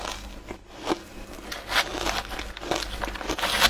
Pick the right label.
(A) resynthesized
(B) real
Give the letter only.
B